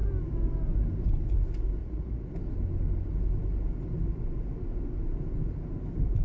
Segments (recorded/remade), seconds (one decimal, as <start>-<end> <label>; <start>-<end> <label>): 0.0-1.8 recorded; 1.8-2.3 remade; 2.3-6.2 recorded